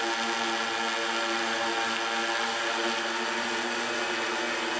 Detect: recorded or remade recorded